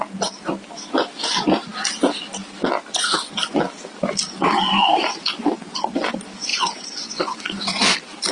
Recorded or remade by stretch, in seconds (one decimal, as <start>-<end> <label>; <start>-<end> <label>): 0.0-6.5 recorded; 6.5-7.6 remade; 7.6-8.3 recorded